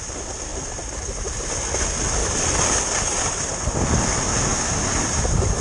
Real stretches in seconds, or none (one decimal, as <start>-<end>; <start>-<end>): 0.0-4.5

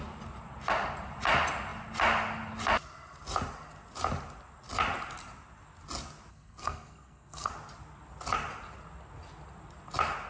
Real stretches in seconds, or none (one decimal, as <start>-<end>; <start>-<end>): 0.0-6.3; 7.5-10.3